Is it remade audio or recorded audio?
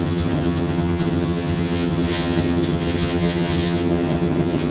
remade